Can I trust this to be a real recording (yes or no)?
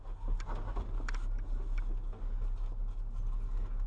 yes